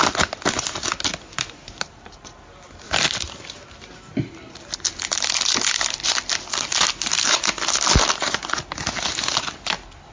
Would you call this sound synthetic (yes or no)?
no